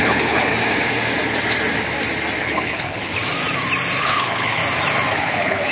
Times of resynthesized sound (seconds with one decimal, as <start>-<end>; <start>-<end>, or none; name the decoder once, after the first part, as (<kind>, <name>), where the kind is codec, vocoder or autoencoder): 0.0-0.5 (codec, HILCodec); 2.4-3.1; 4.0-4.6; 5.2-5.7